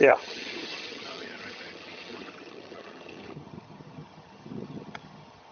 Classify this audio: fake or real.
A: fake